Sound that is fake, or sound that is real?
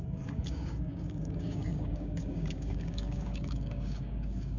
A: fake